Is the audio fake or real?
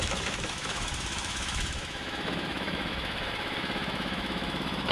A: fake